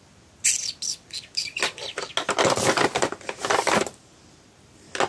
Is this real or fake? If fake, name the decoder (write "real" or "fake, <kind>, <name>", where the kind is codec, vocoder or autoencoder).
real